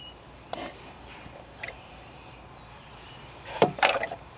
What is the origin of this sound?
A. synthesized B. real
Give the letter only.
A